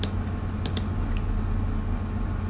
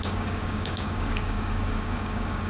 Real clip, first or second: first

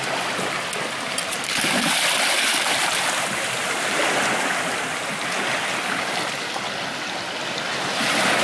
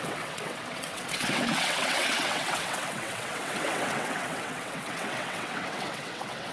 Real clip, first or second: first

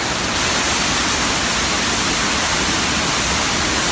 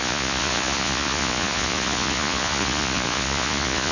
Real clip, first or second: first